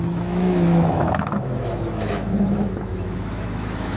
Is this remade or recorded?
remade